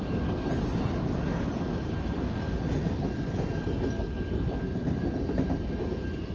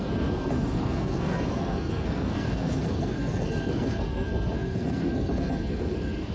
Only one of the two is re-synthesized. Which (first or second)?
second